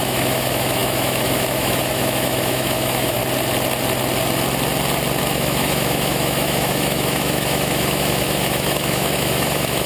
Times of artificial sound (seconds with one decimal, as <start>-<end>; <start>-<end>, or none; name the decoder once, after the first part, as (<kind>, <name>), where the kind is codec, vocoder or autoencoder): 0.0-3.2 (autoencoder, DAC-VAE); 5.2-9.9